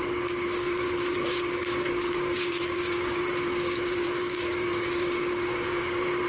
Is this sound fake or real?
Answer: fake